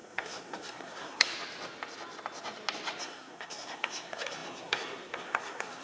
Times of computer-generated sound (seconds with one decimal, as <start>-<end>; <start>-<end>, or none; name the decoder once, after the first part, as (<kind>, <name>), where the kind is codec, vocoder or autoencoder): 0.0-1.3 (codec, SNAC); 3.0-5.8